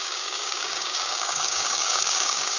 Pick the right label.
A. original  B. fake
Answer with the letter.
B